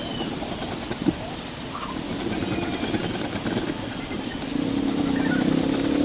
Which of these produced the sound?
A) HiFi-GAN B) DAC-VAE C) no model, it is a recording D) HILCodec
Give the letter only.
C